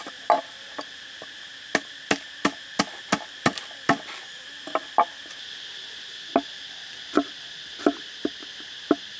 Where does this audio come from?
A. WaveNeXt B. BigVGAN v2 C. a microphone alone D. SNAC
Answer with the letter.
C